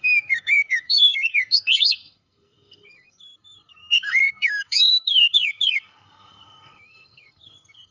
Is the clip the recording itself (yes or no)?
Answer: no